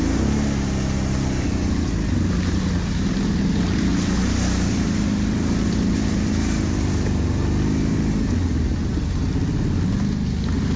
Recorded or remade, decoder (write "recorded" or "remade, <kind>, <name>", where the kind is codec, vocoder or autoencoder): recorded